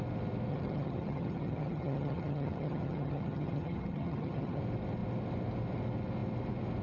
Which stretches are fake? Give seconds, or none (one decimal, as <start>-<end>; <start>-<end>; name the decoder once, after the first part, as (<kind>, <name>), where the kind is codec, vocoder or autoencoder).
0.5-4.6 (vocoder, HiFi-GAN)